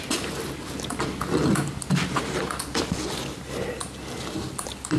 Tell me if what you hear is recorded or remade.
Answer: recorded